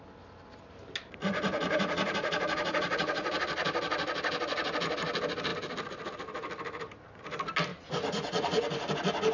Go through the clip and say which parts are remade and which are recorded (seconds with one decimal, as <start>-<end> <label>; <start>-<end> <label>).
0.0-1.3 recorded; 1.3-3.4 remade; 3.4-7.7 recorded; 7.7-8.9 remade; 8.9-9.3 recorded